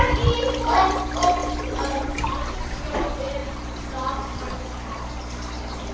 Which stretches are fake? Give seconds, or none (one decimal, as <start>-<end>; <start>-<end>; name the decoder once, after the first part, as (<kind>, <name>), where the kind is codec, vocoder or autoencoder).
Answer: 1.4-2.8 (vocoder, BigVGAN v2); 3.4-4.6